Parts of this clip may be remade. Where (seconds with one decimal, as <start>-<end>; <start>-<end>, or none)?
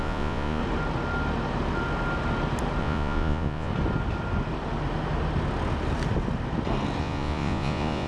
0.0-0.6; 2.8-3.7; 7.0-8.1